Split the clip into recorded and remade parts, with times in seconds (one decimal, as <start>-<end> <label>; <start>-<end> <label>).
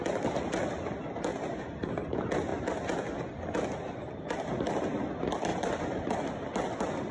0.0-1.3 recorded; 1.3-1.9 remade; 1.9-5.5 recorded; 5.5-6.1 remade; 6.1-7.1 recorded